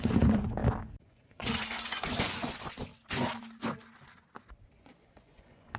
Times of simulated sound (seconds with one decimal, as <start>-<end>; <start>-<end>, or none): 0.0-0.6; 1.1-2.9; 4.8-5.8